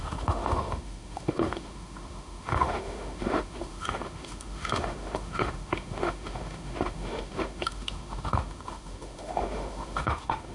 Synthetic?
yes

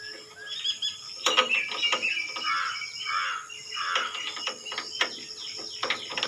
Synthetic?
no